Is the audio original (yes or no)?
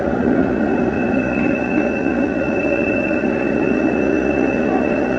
no